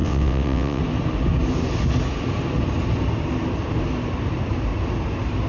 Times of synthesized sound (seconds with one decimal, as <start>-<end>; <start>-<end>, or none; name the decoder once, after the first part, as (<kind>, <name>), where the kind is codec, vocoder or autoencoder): 0.0-0.8 (vocoder, WaveNeXt)